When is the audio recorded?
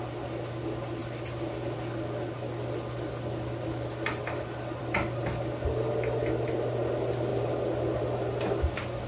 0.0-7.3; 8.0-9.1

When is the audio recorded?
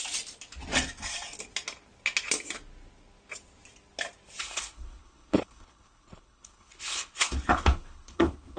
0.0-4.4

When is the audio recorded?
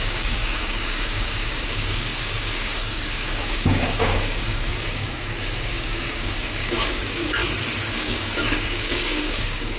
7.4-7.9